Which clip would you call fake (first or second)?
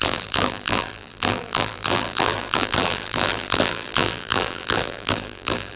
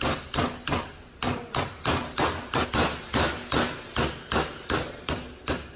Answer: first